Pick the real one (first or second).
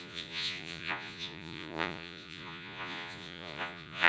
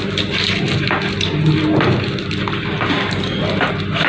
second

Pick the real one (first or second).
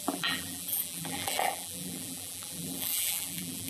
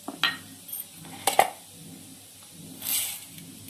second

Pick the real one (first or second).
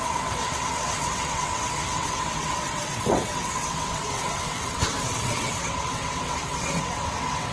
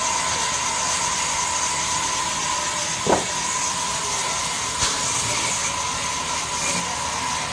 second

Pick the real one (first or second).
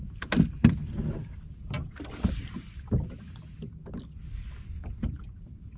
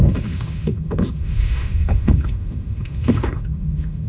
first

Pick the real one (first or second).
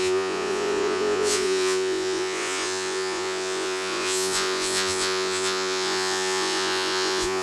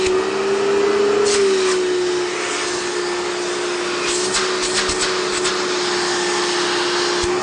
second